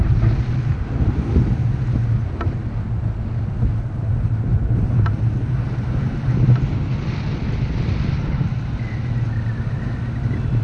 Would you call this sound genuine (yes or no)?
yes